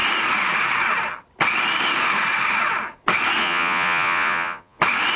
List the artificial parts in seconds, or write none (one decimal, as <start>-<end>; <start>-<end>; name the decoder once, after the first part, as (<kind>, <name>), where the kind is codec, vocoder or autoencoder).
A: 3.4-4.8 (vocoder, Vocos)